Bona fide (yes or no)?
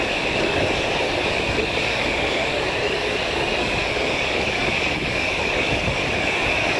no